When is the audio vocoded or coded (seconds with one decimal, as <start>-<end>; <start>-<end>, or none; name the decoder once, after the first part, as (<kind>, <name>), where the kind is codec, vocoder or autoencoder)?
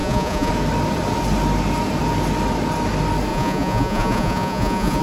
0.0-0.5 (vocoder, Vocos); 3.3-5.0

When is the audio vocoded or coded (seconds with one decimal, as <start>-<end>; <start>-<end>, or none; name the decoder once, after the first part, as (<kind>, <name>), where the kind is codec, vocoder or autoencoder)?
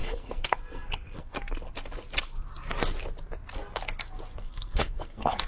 0.0-1.3 (codec, SNAC); 4.4-5.5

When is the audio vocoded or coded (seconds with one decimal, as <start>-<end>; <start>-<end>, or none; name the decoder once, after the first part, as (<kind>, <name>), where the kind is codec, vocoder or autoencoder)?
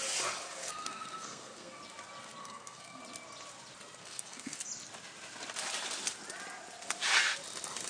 0.6-1.8 (codec, SNAC); 2.4-3.0; 4.0-4.6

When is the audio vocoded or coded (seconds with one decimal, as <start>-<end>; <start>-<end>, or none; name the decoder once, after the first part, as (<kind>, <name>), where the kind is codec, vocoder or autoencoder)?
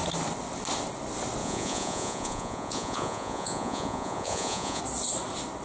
1.4-4.8 (vocoder, Vocos)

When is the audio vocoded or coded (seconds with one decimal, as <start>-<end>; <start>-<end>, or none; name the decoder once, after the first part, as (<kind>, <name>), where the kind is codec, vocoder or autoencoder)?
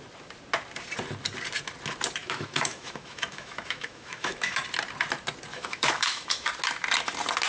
2.2-4.6 (autoencoder, DAC-VAE); 5.5-6.5